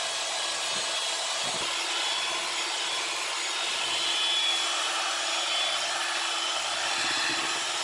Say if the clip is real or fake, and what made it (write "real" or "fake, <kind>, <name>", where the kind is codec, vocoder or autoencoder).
real